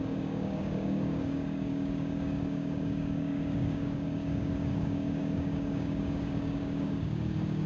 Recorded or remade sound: remade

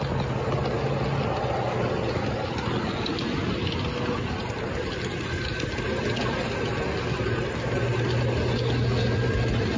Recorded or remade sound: recorded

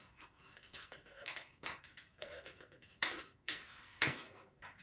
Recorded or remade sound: remade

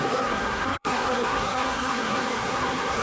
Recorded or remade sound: remade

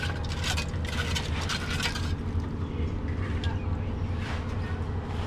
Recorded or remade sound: recorded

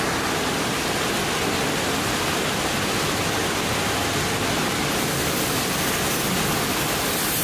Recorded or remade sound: recorded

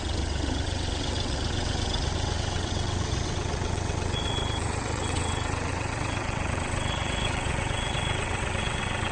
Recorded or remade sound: remade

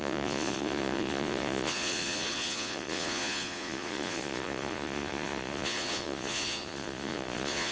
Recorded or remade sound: remade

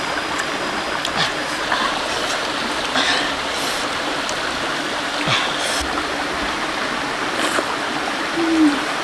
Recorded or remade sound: recorded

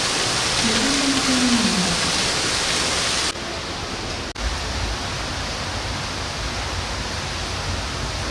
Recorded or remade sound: recorded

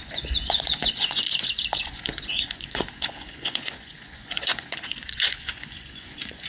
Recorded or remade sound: remade